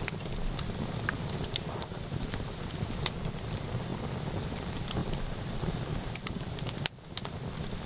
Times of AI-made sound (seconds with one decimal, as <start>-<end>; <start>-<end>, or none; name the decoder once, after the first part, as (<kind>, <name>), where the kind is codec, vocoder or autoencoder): none